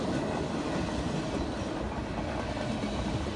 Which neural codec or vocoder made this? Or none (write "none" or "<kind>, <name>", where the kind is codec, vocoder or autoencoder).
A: none